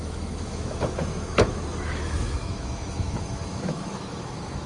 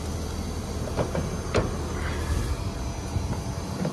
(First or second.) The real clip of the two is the second